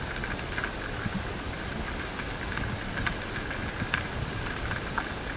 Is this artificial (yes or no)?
no